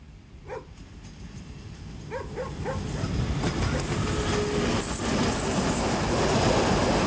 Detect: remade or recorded recorded